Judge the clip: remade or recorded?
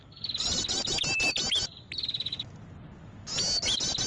recorded